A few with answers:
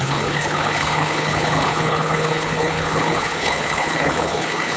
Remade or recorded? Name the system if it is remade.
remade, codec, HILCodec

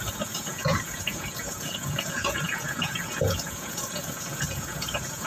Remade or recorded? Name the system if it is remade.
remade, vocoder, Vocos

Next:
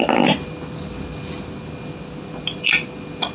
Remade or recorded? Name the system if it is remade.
recorded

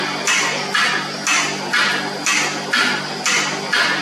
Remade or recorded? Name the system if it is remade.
recorded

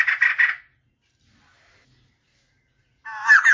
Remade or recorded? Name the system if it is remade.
recorded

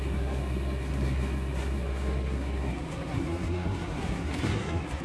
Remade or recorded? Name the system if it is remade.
remade, codec, SNAC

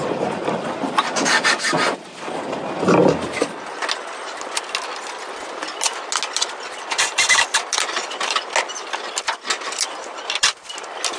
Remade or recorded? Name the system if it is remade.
recorded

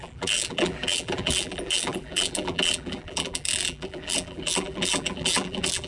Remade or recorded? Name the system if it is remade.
remade, vocoder, BigVGAN v2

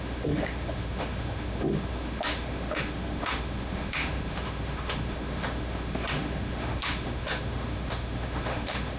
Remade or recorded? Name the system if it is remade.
remade, autoencoder, DAC-VAE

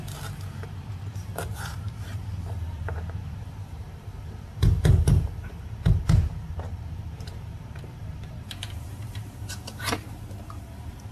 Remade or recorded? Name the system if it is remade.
remade, vocoder, BigVGAN v2